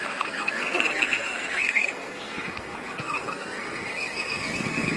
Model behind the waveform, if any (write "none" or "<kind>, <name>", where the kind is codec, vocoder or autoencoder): codec, SNAC